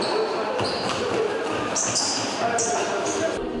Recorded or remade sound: recorded